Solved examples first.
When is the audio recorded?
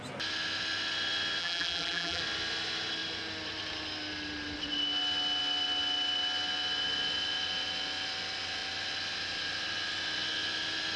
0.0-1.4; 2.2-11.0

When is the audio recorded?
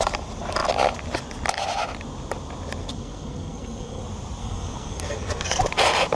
0.0-2.8; 4.0-4.4; 5.6-6.1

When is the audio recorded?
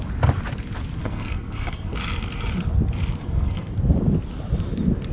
0.0-1.0; 1.9-3.2; 3.7-5.1